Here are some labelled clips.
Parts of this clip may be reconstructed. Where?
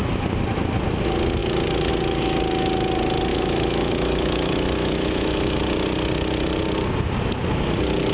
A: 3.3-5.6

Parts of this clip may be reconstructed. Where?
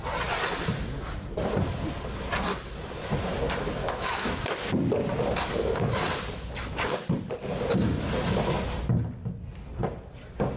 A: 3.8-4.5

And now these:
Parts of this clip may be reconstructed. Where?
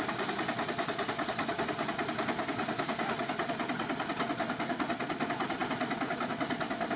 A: none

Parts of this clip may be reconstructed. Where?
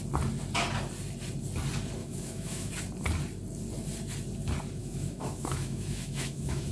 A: 2.0-2.7; 4.8-6.7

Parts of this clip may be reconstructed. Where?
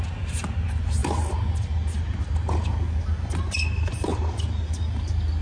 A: none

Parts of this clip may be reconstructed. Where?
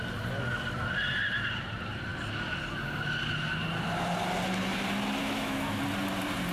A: 5.2-5.8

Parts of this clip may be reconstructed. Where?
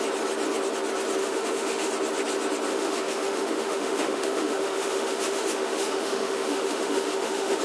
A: 1.2-1.9; 2.7-7.6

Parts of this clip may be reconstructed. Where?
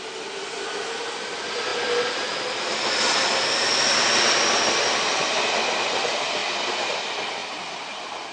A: none